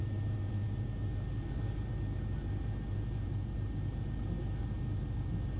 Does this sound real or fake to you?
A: real